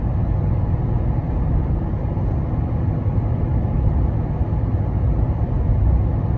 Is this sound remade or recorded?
recorded